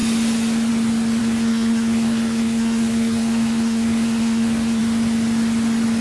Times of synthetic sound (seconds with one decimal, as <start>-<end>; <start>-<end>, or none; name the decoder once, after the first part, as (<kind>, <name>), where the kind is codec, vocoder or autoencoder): 1.2-4.8 (codec, SNAC)